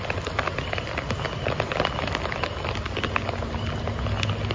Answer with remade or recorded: recorded